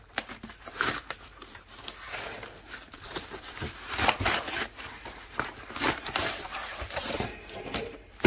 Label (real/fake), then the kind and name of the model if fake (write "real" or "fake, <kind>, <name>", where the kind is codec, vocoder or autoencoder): fake, vocoder, BigVGAN v2